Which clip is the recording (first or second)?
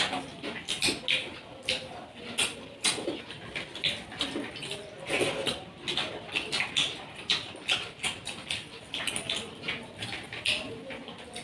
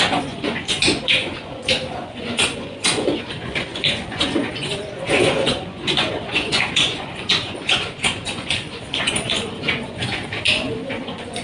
first